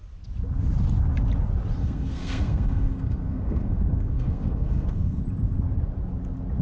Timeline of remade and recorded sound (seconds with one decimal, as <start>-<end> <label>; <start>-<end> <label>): 0.0-1.8 recorded; 1.8-5.2 remade; 5.2-6.6 recorded